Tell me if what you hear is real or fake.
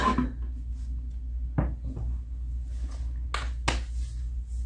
real